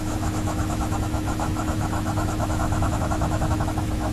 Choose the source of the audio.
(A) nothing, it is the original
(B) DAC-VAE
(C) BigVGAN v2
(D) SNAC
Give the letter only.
B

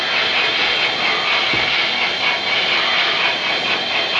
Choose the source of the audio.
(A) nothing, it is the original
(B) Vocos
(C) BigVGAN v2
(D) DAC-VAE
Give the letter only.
A